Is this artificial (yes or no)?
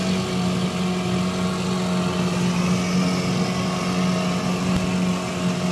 no